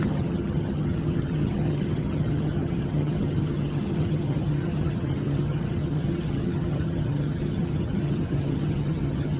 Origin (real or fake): fake